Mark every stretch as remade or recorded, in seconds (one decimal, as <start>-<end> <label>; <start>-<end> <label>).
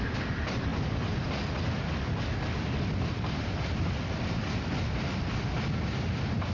0.0-6.5 recorded